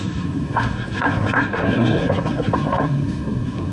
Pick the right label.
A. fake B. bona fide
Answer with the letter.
A